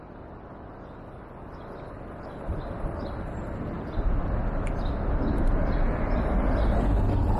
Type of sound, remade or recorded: recorded